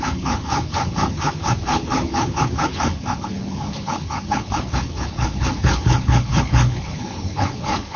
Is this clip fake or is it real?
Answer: fake